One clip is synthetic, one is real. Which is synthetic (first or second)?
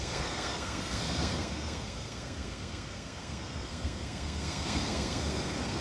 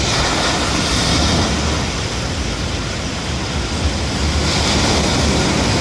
first